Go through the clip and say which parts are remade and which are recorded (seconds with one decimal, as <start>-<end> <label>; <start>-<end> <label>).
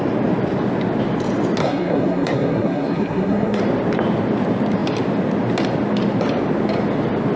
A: 0.0-1.6 recorded; 1.6-3.6 remade; 3.6-7.4 recorded